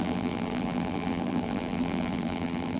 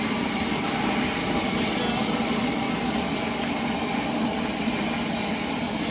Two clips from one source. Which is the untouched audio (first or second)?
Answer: second